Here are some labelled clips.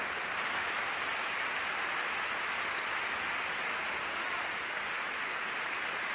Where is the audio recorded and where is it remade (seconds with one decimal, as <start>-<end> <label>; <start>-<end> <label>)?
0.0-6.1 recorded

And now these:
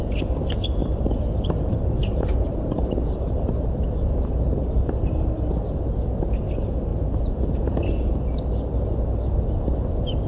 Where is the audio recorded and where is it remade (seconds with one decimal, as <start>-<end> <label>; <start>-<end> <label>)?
0.0-0.8 recorded; 0.8-5.8 remade; 5.8-6.9 recorded; 6.9-7.8 remade; 7.8-10.3 recorded

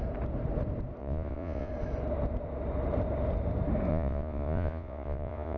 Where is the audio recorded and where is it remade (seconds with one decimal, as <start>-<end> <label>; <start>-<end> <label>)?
0.0-1.0 recorded; 1.0-1.7 remade; 1.7-3.9 recorded; 3.9-5.6 remade

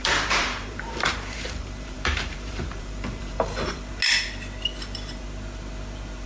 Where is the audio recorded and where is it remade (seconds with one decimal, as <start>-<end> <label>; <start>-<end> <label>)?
0.0-3.9 remade; 3.9-6.3 recorded

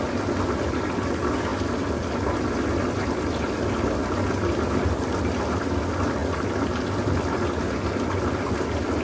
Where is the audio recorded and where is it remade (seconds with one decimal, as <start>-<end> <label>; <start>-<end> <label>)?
0.0-9.0 recorded

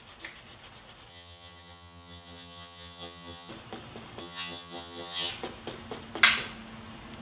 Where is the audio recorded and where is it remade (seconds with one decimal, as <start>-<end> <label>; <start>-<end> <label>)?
0.0-1.1 recorded; 1.1-3.5 remade; 3.5-4.2 recorded; 4.2-5.3 remade; 5.3-7.2 recorded